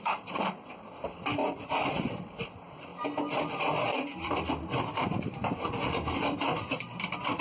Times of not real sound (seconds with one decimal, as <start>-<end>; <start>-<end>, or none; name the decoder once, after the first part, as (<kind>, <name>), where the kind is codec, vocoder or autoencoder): 0.0-2.9 (vocoder, BigVGAN v2); 3.4-7.4